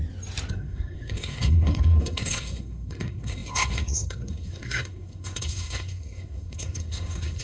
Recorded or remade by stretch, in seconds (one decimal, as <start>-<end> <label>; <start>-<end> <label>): 0.0-0.5 recorded; 0.5-7.4 remade